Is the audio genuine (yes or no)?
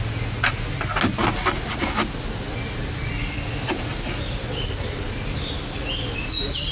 yes